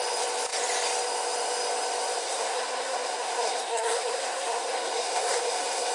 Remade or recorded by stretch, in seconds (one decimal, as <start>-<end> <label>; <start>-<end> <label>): 0.0-2.2 recorded; 2.2-5.9 remade